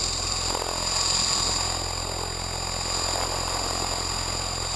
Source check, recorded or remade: recorded